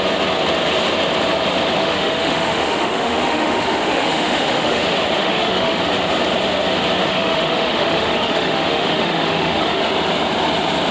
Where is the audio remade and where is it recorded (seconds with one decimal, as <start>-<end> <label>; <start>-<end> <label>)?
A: 0.0-1.8 recorded; 1.8-4.8 remade; 4.8-5.2 recorded; 5.2-5.8 remade; 5.8-7.0 recorded; 7.0-9.8 remade; 9.8-10.9 recorded